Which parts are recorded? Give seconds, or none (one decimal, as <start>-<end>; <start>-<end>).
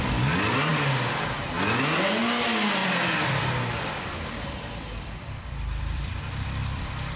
0.0-2.8; 6.8-7.2